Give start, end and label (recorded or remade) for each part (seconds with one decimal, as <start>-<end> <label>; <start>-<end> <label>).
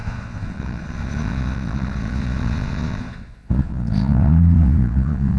0.0-5.4 remade